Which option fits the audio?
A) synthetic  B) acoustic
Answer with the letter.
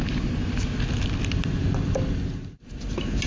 B